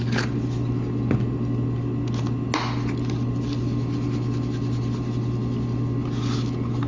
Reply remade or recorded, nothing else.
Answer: recorded